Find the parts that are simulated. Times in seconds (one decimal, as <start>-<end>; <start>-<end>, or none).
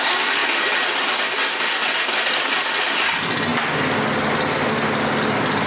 none